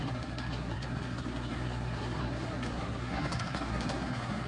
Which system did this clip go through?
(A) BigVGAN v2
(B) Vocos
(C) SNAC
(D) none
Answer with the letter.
C